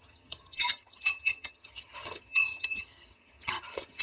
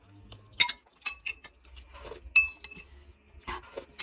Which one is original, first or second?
second